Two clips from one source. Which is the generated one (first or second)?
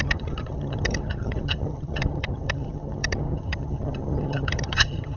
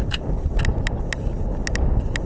first